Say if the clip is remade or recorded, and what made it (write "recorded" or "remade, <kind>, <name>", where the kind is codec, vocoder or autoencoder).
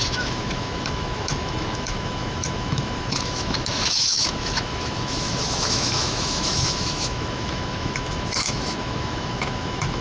remade, autoencoder, DAC-VAE